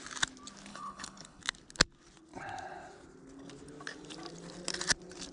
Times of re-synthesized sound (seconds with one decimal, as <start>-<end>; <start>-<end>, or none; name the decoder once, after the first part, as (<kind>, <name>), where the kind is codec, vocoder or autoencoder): 0.7-1.4 (codec, HILCodec)